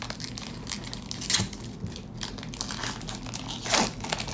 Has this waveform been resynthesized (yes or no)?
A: no